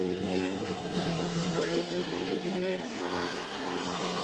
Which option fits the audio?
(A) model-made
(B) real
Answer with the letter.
A